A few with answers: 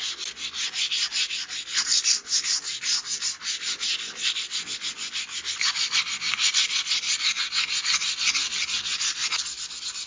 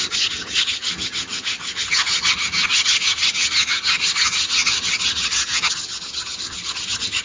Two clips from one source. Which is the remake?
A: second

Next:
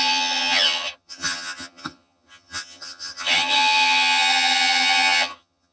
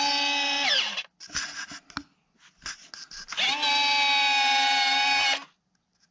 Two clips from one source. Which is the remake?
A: first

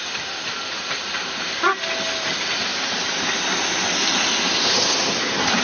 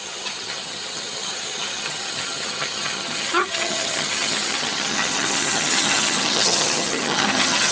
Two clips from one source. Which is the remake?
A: second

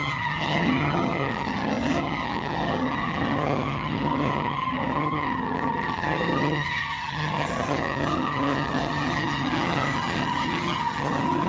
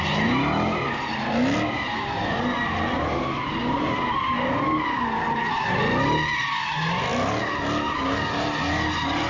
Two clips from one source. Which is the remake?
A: first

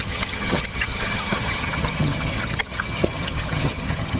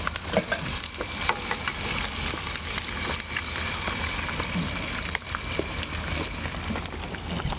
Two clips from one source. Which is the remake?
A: first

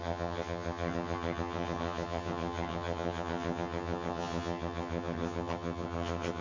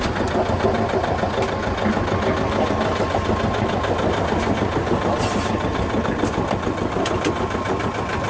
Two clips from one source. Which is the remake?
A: first